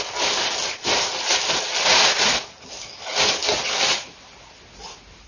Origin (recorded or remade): recorded